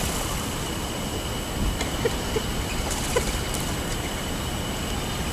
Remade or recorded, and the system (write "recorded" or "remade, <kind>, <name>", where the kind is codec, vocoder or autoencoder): recorded